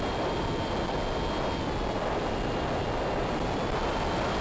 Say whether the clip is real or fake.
real